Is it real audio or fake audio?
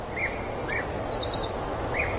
real